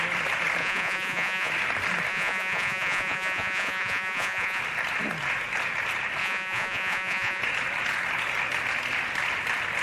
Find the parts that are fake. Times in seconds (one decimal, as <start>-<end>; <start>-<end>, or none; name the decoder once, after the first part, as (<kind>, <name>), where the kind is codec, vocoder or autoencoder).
0.6-1.5 (vocoder, Vocos); 2.1-4.6; 6.2-7.4